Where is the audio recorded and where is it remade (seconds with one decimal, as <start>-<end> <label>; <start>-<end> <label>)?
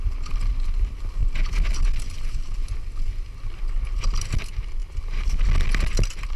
0.0-4.8 recorded; 4.8-5.4 remade; 5.4-6.4 recorded